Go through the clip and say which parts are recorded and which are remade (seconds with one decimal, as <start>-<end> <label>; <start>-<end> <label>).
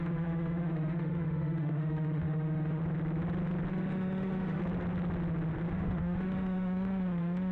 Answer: 0.0-2.8 remade; 2.8-3.7 recorded; 3.7-4.6 remade; 4.6-5.7 recorded; 5.7-7.5 remade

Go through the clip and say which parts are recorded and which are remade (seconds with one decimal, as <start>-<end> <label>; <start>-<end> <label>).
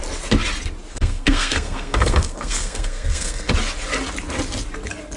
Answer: 0.0-0.9 recorded; 0.9-3.5 remade; 3.5-5.2 recorded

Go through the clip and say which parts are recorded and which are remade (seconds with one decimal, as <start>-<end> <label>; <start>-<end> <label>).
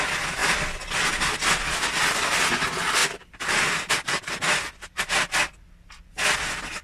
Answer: 0.0-3.0 recorded; 3.0-5.8 remade; 5.8-6.8 recorded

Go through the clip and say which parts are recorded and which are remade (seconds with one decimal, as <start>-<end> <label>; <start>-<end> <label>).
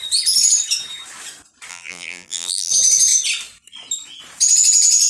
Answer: 0.0-1.7 recorded; 1.7-2.7 remade; 2.7-5.1 recorded